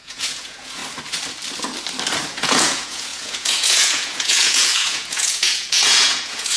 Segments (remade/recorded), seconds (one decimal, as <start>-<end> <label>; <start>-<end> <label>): 0.0-0.8 remade; 0.8-2.3 recorded; 2.3-6.6 remade